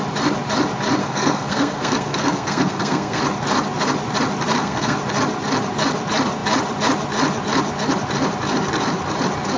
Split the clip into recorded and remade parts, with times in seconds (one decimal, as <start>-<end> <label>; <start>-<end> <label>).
0.0-1.0 recorded; 1.0-3.2 remade; 3.2-4.5 recorded; 4.5-5.0 remade; 5.0-9.6 recorded